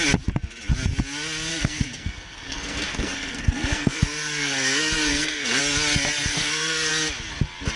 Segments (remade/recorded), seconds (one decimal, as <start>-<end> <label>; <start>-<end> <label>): 0.0-1.5 recorded; 1.5-5.6 remade; 5.6-6.3 recorded; 6.3-6.9 remade; 6.9-7.8 recorded

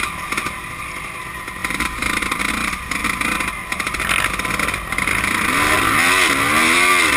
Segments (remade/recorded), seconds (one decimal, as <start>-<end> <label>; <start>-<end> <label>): 0.0-7.2 recorded